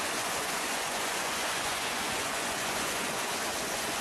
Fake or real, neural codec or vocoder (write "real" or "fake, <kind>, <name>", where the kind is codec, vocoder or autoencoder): fake, vocoder, Vocos